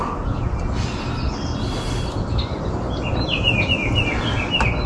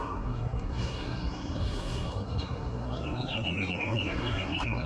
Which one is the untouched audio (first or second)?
first